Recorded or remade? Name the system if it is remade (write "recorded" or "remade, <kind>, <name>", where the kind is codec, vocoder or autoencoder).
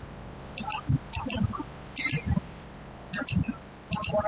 recorded